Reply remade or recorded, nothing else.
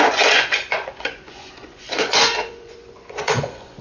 remade